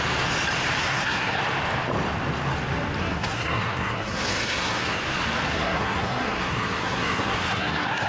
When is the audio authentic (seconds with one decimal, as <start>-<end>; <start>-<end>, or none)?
0.0-0.8; 1.4-3.0; 5.0-5.5